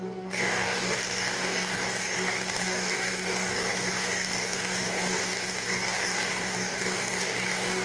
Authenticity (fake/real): fake